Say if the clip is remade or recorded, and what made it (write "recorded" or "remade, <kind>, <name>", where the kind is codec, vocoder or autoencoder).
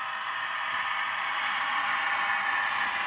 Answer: recorded